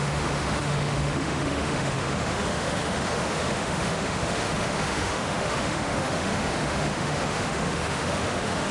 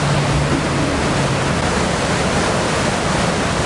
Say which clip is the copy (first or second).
first